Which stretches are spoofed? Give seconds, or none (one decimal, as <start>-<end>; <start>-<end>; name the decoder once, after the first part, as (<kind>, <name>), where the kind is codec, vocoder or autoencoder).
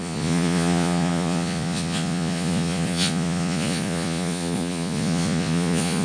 0.0-6.0 (vocoder, Vocos)